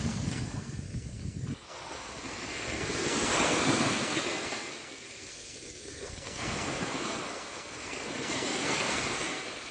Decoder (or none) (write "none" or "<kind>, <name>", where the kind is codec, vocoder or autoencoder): codec, SNAC